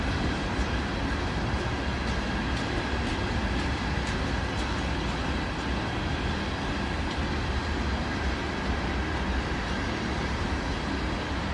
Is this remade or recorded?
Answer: recorded